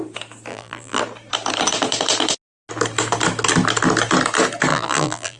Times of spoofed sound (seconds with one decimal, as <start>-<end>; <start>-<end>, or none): 0.5-1.0; 4.7-5.4